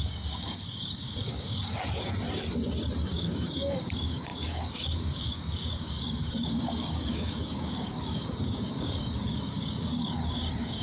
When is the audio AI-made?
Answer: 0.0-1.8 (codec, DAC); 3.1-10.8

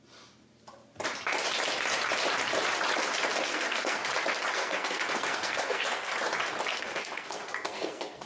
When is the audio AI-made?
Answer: 3.5-4.1 (codec, SNAC); 4.5-6.1; 6.7-8.3

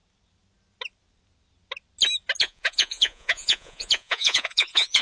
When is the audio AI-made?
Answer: 2.4-5.0 (vocoder, Vocos)

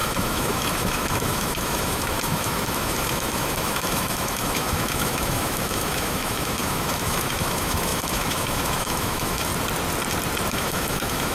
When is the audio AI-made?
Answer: 0.0-9.5 (autoencoder, DAC-VAE); 10.5-11.3

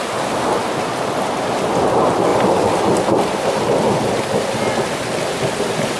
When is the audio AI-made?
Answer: none

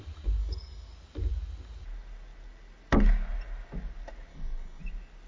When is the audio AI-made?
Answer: 0.4-0.9 (codec, DAC); 4.3-4.8

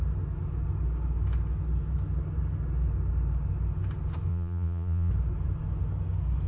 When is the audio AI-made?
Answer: 4.3-5.1 (vocoder, Vocos)

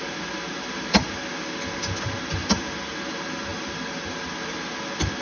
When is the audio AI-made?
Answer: none